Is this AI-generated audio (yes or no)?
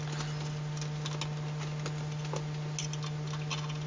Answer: no